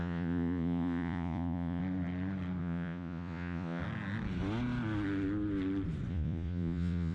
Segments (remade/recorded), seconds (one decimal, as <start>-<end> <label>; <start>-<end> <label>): 0.0-1.8 remade; 1.8-2.6 recorded; 2.6-3.8 remade; 3.8-6.1 recorded; 6.1-7.1 remade